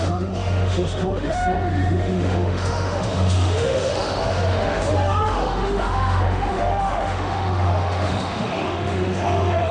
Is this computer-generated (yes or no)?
yes